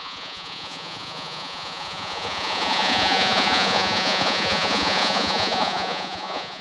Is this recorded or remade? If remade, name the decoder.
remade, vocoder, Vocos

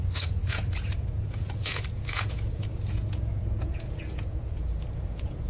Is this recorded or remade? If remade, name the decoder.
remade, vocoder, Vocos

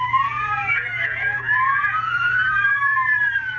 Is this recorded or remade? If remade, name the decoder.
remade, vocoder, Vocos